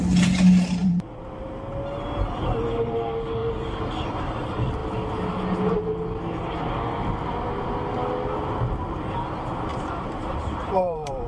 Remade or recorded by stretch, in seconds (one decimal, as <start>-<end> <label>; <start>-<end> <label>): 0.0-0.8 recorded; 0.8-1.6 remade; 1.6-9.7 recorded; 9.7-11.3 remade